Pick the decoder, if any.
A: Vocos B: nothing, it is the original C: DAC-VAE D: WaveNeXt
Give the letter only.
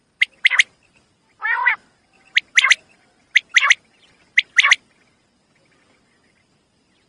B